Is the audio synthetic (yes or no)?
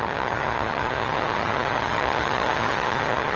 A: yes